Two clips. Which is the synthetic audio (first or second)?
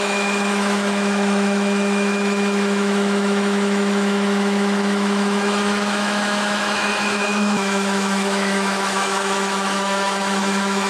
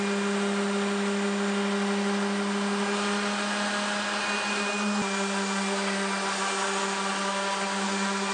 first